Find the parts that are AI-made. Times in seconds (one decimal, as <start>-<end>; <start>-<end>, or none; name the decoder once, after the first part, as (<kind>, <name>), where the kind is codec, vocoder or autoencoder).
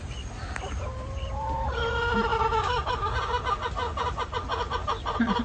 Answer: none